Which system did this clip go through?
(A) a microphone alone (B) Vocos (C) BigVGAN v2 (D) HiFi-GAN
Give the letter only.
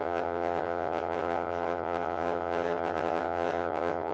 D